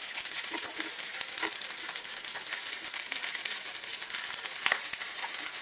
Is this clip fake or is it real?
real